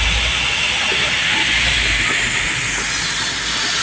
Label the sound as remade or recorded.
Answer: recorded